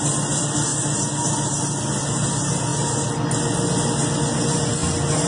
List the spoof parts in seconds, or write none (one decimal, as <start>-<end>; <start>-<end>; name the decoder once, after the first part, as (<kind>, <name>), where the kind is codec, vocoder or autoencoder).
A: none